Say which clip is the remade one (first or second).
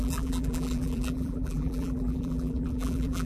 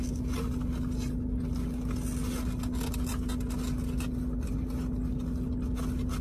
first